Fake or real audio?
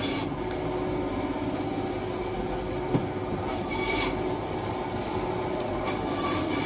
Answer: real